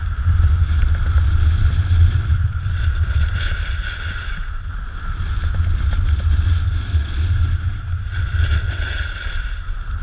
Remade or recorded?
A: recorded